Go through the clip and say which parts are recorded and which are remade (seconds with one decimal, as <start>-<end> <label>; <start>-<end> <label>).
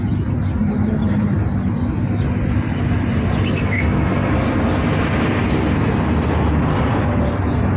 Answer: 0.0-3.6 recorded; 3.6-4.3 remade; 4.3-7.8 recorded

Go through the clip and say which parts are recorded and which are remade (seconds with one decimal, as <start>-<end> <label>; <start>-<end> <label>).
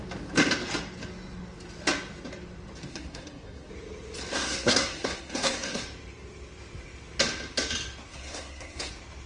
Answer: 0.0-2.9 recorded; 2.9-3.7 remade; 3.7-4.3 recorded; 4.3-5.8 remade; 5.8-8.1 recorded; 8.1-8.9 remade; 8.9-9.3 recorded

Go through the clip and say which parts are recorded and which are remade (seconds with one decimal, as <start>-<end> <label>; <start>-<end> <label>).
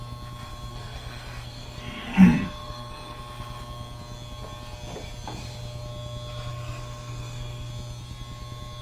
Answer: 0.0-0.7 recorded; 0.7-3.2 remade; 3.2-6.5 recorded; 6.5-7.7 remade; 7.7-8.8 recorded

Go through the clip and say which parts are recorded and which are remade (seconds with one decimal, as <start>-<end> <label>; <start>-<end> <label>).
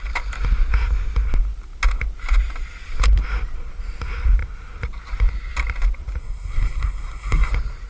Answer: 0.0-6.2 recorded; 6.2-7.5 remade; 7.5-7.9 recorded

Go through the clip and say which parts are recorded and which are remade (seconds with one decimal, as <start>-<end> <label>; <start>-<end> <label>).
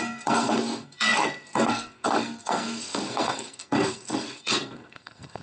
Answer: 0.0-5.4 remade